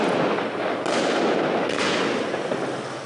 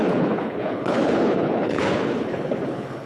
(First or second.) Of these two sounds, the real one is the first